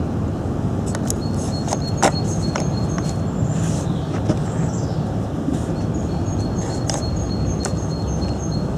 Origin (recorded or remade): recorded